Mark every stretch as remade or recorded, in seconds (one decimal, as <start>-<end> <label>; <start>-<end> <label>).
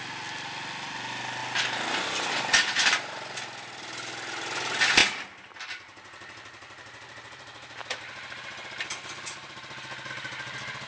0.0-10.9 recorded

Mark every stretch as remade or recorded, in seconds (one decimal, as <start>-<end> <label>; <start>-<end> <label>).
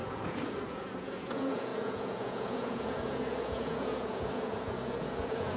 0.0-5.6 remade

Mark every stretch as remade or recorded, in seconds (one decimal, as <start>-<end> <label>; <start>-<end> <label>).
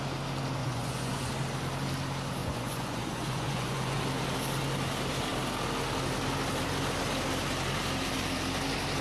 0.0-0.6 recorded; 0.6-1.3 remade; 1.3-2.4 recorded; 2.4-4.0 remade; 4.0-9.0 recorded